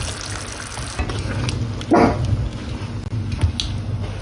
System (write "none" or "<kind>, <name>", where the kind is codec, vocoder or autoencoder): none